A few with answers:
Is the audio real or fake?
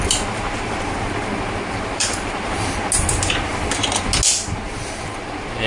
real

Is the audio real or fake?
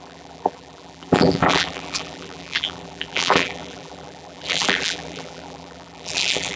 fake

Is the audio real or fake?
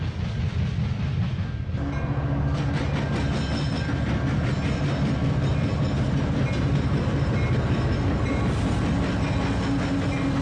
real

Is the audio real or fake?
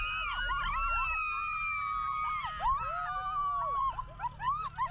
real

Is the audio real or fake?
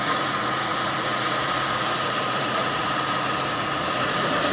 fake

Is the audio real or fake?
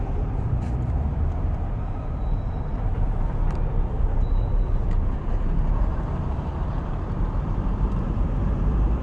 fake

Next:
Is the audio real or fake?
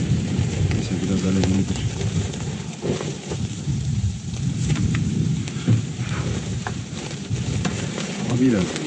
fake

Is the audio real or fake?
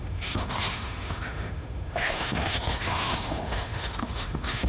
fake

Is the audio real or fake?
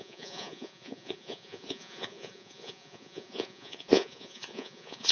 fake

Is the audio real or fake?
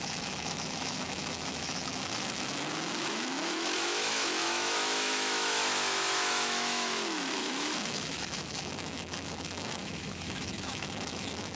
fake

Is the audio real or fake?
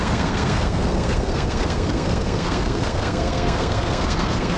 fake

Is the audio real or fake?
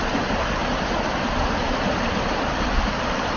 fake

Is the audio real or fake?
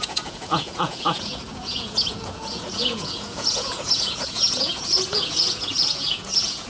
fake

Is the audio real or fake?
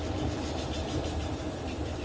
real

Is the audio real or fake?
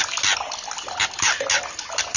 real